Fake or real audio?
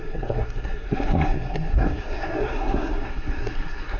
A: fake